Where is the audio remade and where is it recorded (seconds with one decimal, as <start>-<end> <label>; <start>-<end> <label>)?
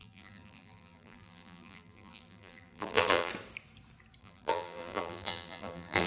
0.0-3.3 remade; 3.3-4.2 recorded; 4.2-6.1 remade